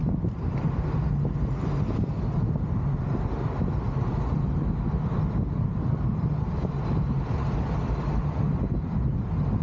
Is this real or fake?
real